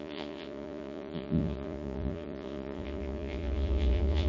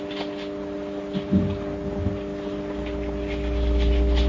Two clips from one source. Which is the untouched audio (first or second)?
second